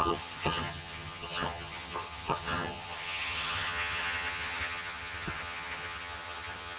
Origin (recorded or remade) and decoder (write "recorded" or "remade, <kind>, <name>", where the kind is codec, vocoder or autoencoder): remade, vocoder, HiFi-GAN